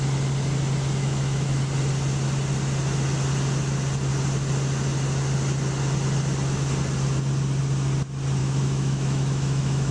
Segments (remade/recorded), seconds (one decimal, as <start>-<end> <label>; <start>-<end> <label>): 0.0-1.0 recorded; 1.0-1.6 remade; 1.6-8.4 recorded; 8.4-9.9 remade